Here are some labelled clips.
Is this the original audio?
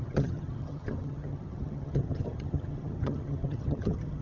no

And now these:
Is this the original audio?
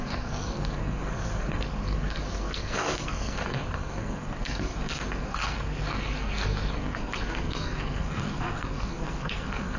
no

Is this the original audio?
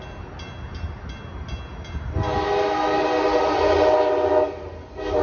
yes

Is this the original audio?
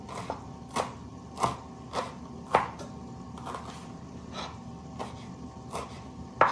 yes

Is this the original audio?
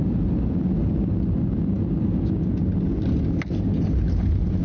yes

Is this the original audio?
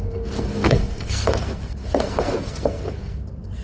no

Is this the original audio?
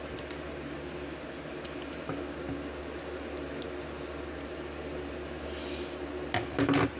yes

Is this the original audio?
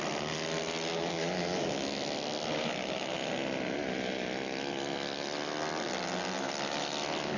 yes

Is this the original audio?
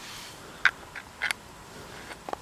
yes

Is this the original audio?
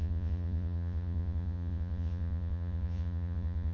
no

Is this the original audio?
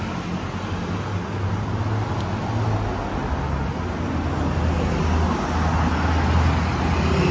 yes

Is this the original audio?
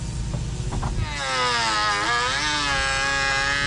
yes